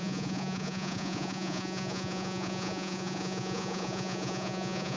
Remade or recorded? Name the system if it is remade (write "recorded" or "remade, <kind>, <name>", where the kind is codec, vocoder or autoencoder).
remade, vocoder, Vocos